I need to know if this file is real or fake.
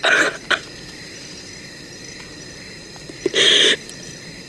real